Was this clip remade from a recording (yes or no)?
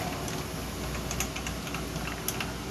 no